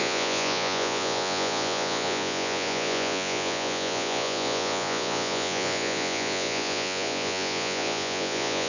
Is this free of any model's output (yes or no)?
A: no